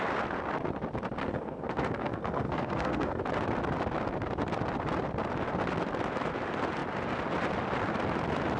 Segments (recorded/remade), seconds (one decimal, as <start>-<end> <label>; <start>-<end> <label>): 0.0-1.2 recorded; 1.2-3.2 remade; 3.2-8.6 recorded